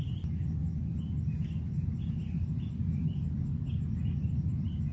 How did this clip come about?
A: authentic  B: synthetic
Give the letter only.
A